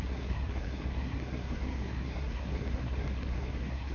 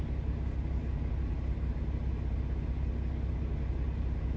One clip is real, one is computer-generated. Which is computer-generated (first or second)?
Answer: first